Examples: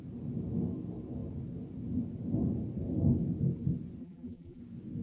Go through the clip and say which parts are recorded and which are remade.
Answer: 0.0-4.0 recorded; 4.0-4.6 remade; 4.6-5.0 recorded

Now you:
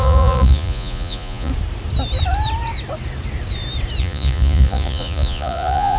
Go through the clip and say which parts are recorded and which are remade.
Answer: 0.0-1.5 remade; 1.5-4.0 recorded; 4.0-6.0 remade

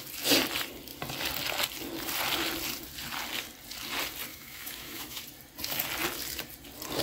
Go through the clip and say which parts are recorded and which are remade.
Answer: 0.0-4.3 recorded; 4.3-5.2 remade; 5.2-7.0 recorded

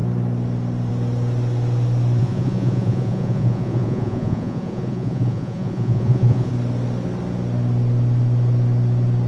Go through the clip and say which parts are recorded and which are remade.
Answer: 0.0-2.2 recorded; 2.2-6.5 remade; 6.5-9.3 recorded